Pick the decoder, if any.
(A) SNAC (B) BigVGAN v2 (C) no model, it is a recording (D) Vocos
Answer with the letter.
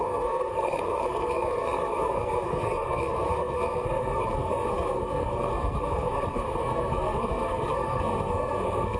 A